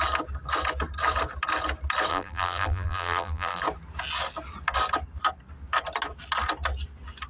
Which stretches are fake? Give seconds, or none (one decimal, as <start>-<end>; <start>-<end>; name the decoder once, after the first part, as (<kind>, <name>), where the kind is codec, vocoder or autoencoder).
2.1-3.6 (vocoder, BigVGAN v2)